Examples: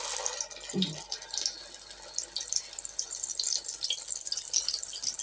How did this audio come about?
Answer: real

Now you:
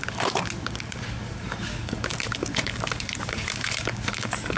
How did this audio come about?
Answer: fake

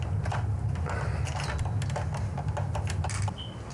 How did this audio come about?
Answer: real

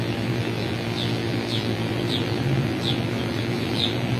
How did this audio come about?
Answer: fake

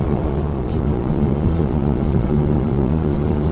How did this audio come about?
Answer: fake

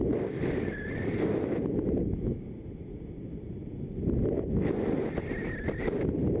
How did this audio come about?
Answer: real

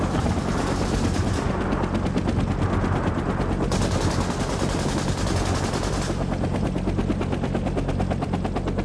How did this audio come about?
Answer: real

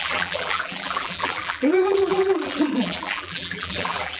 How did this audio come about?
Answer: fake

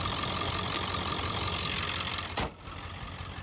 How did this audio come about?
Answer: real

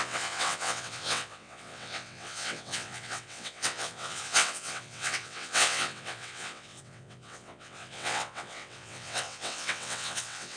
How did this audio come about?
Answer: fake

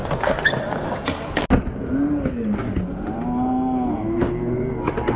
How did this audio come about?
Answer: real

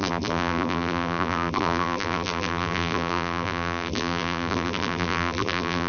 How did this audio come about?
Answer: fake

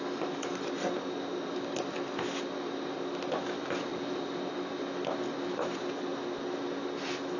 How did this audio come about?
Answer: real